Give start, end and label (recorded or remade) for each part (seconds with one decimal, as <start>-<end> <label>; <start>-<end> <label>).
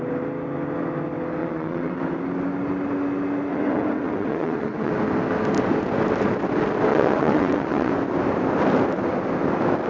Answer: 0.0-1.4 recorded; 1.4-2.0 remade; 2.0-3.5 recorded; 3.5-4.9 remade; 4.9-6.9 recorded; 6.9-7.9 remade; 7.9-9.9 recorded